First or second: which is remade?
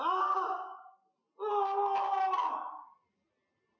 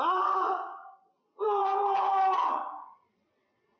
second